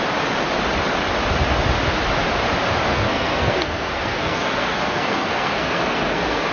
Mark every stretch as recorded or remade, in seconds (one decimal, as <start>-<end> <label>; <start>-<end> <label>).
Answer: 0.0-2.9 recorded; 2.9-6.5 remade